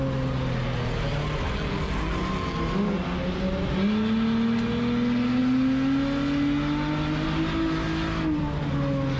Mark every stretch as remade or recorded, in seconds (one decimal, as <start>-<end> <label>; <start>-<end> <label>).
0.0-9.2 recorded

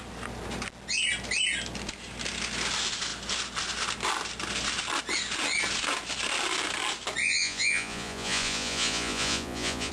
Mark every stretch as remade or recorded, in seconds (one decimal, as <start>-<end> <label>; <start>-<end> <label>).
0.0-7.2 recorded; 7.2-9.9 remade

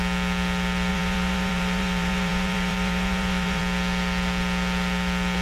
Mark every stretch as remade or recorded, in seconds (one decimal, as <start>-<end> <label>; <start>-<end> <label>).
0.0-0.9 recorded; 0.9-3.6 remade; 3.6-5.4 recorded

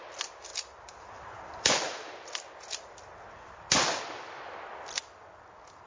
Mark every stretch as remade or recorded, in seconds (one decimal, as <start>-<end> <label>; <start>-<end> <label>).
0.0-0.5 recorded; 0.5-4.0 remade; 4.0-5.9 recorded

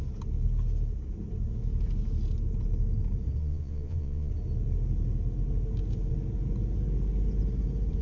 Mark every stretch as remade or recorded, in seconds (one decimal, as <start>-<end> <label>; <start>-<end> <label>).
0.0-3.4 recorded; 3.4-4.3 remade; 4.3-8.0 recorded

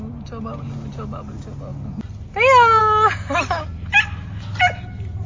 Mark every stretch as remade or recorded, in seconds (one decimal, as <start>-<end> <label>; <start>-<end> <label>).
0.0-5.3 recorded

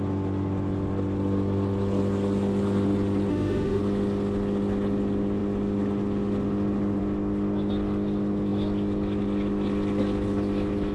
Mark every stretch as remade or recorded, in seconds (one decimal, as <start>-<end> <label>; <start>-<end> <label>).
0.0-3.3 recorded; 3.3-3.8 remade; 3.8-10.9 recorded